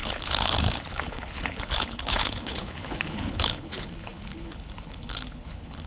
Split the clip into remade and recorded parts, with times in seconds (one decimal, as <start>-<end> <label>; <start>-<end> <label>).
0.0-5.9 remade